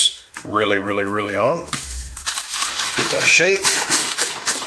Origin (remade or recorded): remade